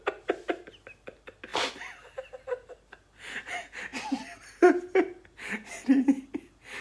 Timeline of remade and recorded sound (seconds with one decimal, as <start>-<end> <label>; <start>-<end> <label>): 0.0-6.8 recorded